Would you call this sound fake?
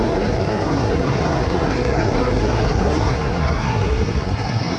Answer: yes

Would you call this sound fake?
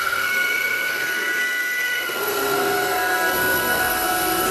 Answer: yes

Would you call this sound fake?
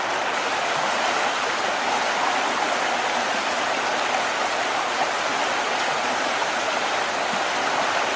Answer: no